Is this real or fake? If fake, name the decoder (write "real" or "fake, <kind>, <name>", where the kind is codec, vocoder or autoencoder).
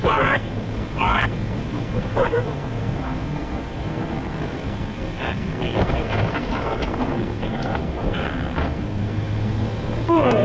fake, codec, SNAC